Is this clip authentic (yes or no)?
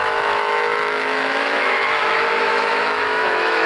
no